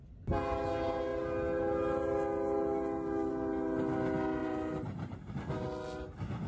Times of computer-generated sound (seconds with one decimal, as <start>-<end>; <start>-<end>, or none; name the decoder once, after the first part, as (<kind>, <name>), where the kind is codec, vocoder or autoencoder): 4.4-5.3 (vocoder, BigVGAN v2)